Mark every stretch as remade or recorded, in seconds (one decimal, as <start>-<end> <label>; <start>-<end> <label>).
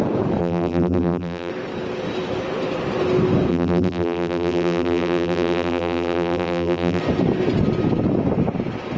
0.0-0.4 recorded; 0.4-1.5 remade; 1.5-3.5 recorded; 3.5-7.0 remade; 7.0-9.0 recorded